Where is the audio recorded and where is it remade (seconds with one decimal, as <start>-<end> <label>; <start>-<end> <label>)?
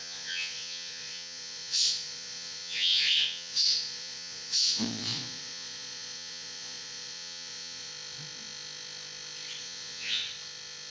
0.0-7.9 remade; 7.9-9.6 recorded; 9.6-10.2 remade; 10.2-10.9 recorded